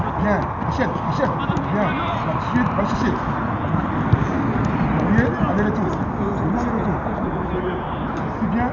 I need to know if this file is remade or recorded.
recorded